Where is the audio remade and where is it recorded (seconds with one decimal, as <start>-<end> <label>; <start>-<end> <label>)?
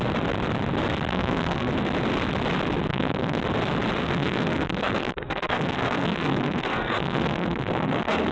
0.0-1.1 recorded; 1.1-1.7 remade; 1.7-2.9 recorded; 2.9-3.4 remade; 3.4-4.0 recorded; 4.0-8.3 remade